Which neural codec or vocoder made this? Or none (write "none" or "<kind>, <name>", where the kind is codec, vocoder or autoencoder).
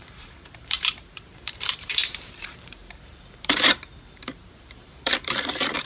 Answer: vocoder, BigVGAN v2